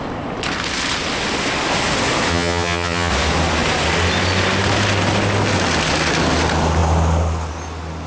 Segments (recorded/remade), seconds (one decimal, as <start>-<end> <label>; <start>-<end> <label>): 0.0-2.3 recorded; 2.3-3.1 remade; 3.1-8.1 recorded